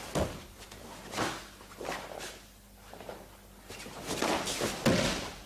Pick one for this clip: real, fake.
real